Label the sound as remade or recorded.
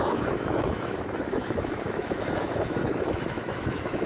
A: remade